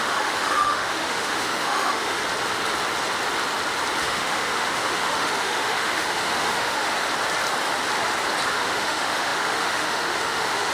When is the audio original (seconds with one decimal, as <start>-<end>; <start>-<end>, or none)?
2.2-4.0; 6.9-8.5